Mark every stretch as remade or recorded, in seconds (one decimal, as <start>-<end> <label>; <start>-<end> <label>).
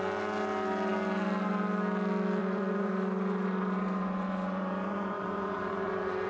0.0-2.4 recorded; 2.4-6.3 remade